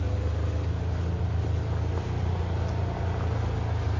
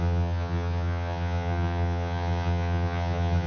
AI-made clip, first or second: second